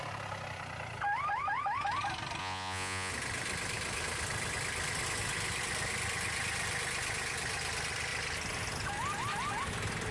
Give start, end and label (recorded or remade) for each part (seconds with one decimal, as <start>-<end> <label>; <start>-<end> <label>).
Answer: 0.0-2.4 recorded; 2.4-3.1 remade; 3.1-10.1 recorded

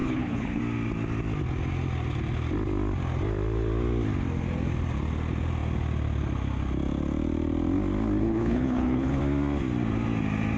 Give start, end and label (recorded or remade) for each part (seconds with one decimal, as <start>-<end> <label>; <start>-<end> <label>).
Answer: 0.0-0.6 remade; 0.6-8.2 recorded; 8.2-9.2 remade; 9.2-10.6 recorded

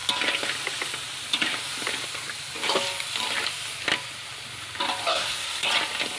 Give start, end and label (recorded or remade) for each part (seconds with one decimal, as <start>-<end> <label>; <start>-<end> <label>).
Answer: 0.0-5.1 recorded; 5.1-5.7 remade; 5.7-6.2 recorded